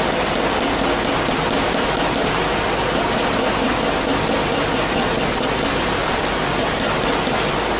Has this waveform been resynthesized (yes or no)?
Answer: no